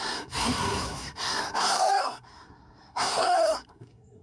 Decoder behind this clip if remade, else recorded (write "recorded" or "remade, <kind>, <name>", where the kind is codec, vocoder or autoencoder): remade, codec, SNAC